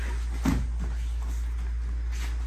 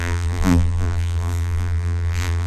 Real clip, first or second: first